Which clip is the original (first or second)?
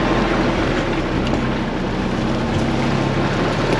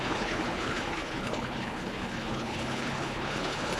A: first